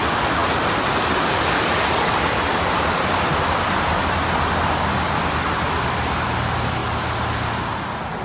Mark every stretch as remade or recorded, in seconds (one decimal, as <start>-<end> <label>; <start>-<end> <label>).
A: 0.0-8.2 recorded